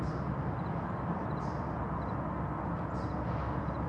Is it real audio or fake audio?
real